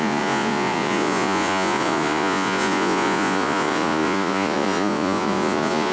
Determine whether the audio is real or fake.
fake